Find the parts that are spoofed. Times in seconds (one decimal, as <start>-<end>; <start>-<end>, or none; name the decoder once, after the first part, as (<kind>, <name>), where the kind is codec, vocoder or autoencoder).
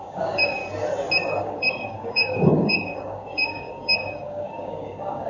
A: 0.0-0.6 (codec, DAC); 1.4-5.3